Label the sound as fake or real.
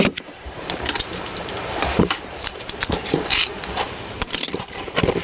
fake